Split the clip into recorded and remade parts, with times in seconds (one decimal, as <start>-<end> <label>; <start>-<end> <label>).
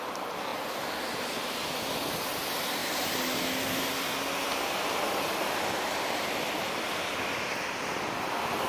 0.0-8.7 recorded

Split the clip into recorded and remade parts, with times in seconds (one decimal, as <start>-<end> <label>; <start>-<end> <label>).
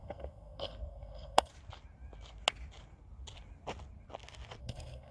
0.0-1.5 remade; 1.5-4.6 recorded; 4.6-5.1 remade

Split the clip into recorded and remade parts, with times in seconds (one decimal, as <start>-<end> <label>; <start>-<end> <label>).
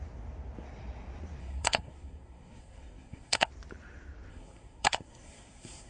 0.0-1.4 recorded; 1.4-3.5 remade; 3.5-4.3 recorded; 4.3-5.9 remade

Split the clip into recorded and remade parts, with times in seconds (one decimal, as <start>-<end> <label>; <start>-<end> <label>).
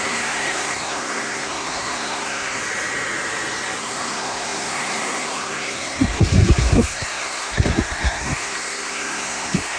0.0-2.6 remade; 2.6-3.8 recorded; 3.8-9.8 remade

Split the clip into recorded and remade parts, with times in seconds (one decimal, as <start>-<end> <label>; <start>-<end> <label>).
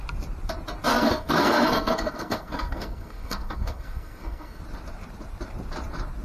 0.0-0.9 recorded; 0.9-4.6 remade; 4.6-6.2 recorded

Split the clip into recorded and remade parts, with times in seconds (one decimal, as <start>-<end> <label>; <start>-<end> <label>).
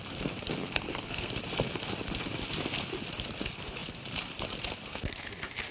0.0-0.6 recorded; 0.6-1.3 remade; 1.3-5.7 recorded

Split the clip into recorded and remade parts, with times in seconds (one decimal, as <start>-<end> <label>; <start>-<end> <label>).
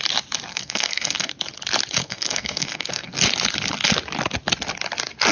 0.0-0.5 recorded; 0.5-1.3 remade; 1.3-2.0 recorded; 2.0-3.2 remade; 3.2-5.3 recorded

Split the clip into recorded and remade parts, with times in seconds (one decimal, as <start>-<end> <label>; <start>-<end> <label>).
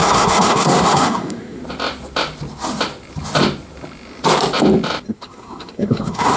0.0-1.6 remade; 1.6-5.1 recorded; 5.1-6.4 remade